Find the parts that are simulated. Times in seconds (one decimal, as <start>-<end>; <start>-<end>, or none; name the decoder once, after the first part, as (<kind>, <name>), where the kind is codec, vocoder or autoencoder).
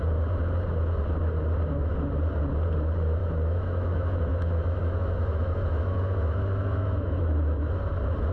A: 3.2-7.8 (autoencoder, DAC-VAE)